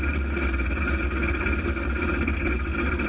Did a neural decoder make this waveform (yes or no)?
no